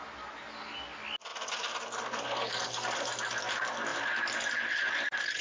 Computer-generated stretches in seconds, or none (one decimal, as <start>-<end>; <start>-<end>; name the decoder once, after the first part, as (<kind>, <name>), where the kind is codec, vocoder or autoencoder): none